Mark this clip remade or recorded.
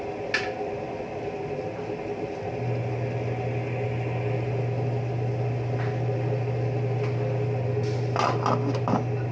recorded